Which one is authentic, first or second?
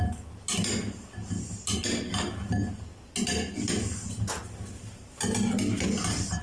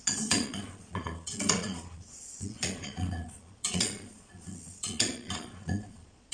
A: first